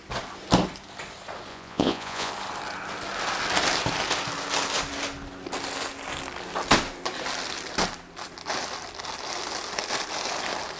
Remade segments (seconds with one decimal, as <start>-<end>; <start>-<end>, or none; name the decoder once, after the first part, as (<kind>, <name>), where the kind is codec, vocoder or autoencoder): 1.5-2.3 (vocoder, Vocos)